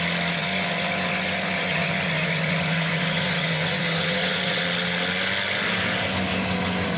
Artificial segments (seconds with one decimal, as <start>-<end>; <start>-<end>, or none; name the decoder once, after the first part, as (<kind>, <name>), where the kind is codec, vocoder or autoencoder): 0.4-4.6 (vocoder, Vocos)